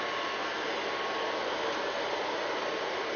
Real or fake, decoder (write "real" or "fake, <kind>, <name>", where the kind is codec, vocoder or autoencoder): real